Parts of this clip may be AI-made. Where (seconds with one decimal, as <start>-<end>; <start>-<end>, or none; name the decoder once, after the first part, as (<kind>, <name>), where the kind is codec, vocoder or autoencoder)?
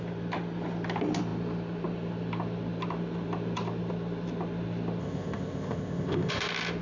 5.0-6.3 (codec, ZipCodec)